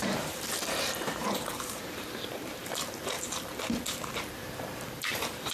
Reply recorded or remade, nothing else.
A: remade